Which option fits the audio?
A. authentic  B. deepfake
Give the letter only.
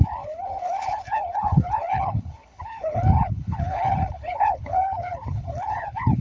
B